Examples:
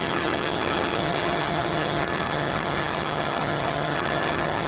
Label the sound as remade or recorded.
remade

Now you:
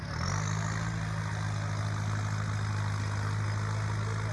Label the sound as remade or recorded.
recorded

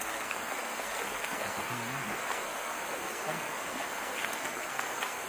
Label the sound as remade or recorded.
remade